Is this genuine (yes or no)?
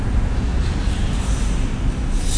yes